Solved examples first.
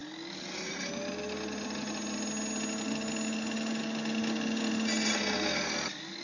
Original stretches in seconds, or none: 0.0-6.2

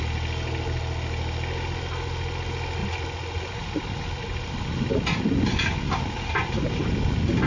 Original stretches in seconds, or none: 0.0-7.5

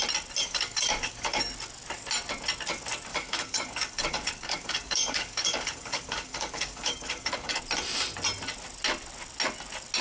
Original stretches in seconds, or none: 0.0-0.4; 1.4-3.1; 7.6-10.0

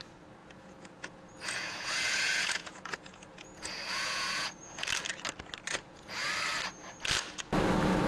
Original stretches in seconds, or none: 0.0-0.4; 4.8-5.7; 6.3-8.1